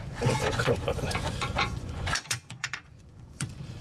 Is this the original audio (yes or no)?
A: no